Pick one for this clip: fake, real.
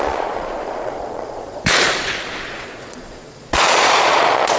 fake